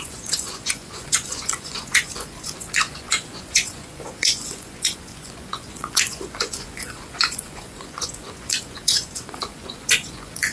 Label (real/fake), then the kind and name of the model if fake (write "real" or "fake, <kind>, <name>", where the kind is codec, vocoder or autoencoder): fake, vocoder, Vocos